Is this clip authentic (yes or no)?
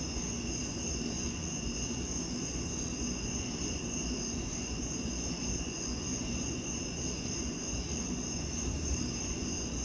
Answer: no